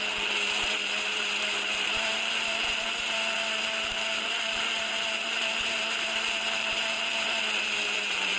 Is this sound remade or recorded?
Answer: remade